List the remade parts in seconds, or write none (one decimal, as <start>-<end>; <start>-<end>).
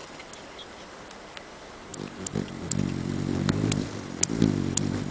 0.0-0.7; 1.9-5.1